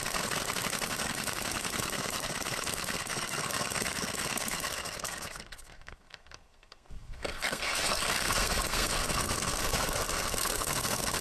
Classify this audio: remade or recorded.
remade